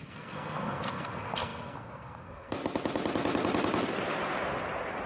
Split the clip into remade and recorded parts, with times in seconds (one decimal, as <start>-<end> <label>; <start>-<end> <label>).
0.0-2.6 remade; 2.6-5.1 recorded